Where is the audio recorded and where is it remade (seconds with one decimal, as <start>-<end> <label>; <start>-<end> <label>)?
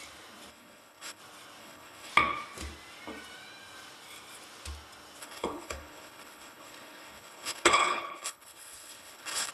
0.0-0.5 recorded; 0.5-1.2 remade; 1.2-1.6 recorded; 1.6-2.1 remade; 2.1-5.2 recorded; 5.2-9.5 remade